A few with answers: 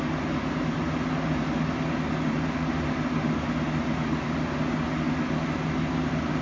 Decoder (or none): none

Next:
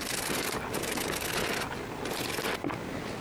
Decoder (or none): none